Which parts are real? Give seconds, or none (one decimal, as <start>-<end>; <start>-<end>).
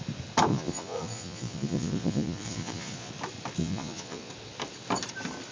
0.0-0.5; 3.1-3.6; 4.3-5.5